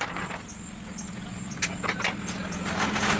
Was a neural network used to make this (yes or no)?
no